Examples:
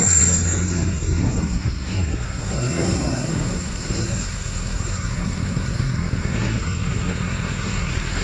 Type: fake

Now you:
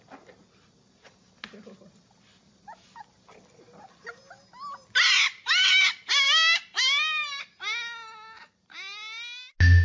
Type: real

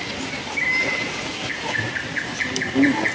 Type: real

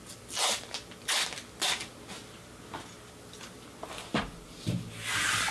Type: real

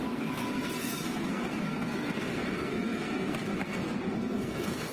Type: fake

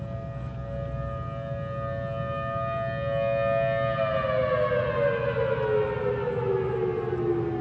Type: real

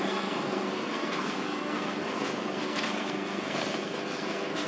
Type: fake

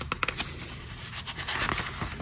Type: real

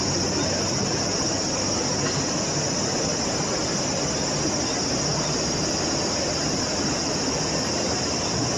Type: real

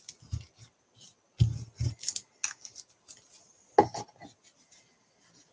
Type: real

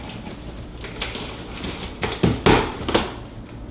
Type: real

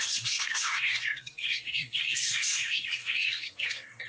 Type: fake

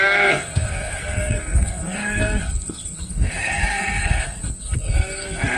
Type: fake